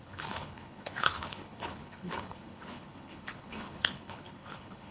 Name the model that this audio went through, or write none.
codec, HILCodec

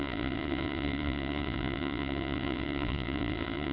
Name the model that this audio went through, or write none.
vocoder, WaveNeXt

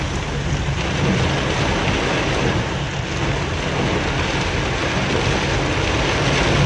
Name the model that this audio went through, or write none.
none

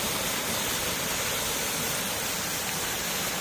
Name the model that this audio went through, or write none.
none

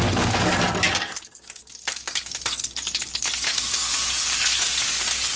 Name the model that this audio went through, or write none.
codec, DAC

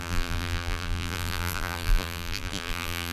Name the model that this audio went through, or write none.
vocoder, BigVGAN v2